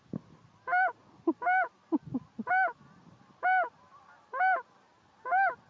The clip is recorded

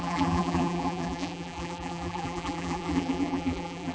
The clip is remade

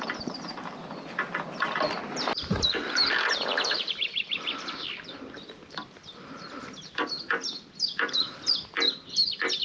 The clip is remade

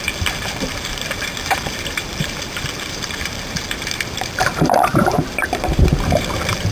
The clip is remade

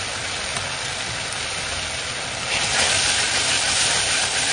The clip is recorded